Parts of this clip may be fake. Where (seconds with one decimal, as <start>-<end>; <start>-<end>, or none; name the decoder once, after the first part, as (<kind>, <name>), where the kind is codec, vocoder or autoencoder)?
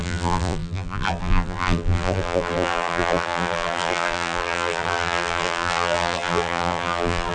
0.0-7.3 (vocoder, BigVGAN v2)